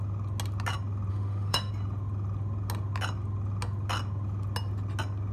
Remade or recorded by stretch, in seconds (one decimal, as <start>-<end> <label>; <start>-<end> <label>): 0.0-1.1 recorded; 1.1-1.7 remade; 1.7-5.3 recorded